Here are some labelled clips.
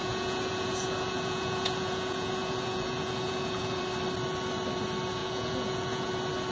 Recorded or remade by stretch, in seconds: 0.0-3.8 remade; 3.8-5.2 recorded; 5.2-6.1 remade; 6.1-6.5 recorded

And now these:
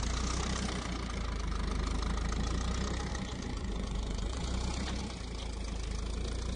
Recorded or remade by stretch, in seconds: 0.0-3.1 recorded; 3.1-5.0 remade; 5.0-6.6 recorded

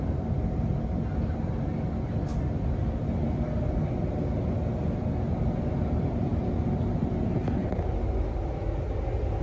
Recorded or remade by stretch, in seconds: 0.0-9.4 recorded